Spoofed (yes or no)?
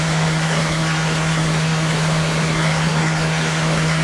yes